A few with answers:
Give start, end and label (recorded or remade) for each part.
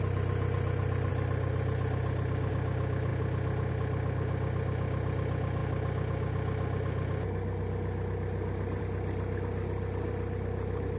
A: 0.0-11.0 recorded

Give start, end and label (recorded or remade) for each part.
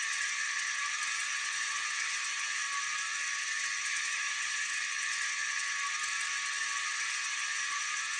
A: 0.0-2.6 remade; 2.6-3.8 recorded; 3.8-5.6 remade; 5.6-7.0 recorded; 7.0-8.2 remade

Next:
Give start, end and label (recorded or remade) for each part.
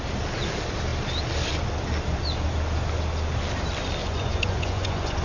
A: 0.0-4.0 recorded; 4.0-5.2 remade